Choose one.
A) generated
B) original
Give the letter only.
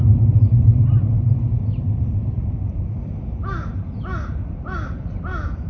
B